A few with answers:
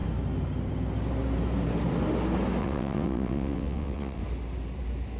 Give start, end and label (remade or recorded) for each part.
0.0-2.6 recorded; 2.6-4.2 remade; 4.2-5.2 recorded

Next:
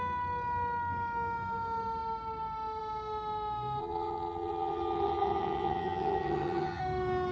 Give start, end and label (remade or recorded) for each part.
0.0-3.8 recorded; 3.8-6.8 remade; 6.8-7.3 recorded

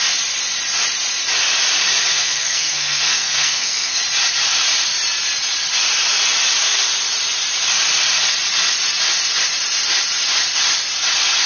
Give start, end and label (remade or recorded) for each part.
0.0-2.1 recorded; 2.1-4.0 remade; 4.0-11.5 recorded